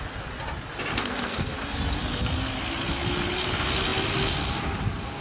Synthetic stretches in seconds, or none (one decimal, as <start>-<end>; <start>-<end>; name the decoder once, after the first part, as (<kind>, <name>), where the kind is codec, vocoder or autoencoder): 0.9-1.5 (codec, SNAC)